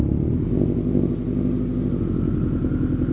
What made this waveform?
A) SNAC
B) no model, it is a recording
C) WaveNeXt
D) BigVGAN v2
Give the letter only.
B